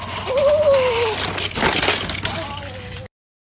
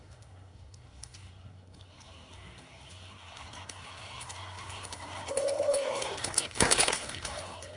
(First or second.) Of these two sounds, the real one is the first